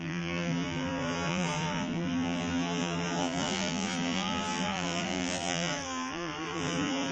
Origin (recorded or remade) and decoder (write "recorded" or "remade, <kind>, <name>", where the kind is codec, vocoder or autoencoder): remade, vocoder, BigVGAN v2